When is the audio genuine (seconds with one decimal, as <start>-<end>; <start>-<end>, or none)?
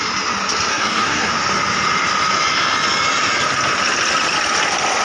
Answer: 0.0-0.7; 1.3-5.0